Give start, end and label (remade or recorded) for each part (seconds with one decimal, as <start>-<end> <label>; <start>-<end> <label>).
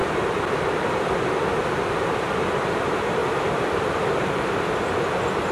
0.0-0.9 remade; 0.9-3.2 recorded; 3.2-4.7 remade; 4.7-5.5 recorded